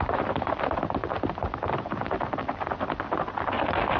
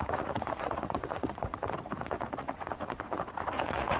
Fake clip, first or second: second